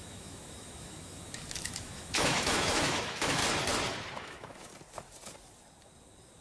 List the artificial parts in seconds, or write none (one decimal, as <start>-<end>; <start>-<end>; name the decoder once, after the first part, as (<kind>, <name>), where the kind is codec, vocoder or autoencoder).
0.0-3.4 (autoencoder, DAC-VAE); 4.2-4.7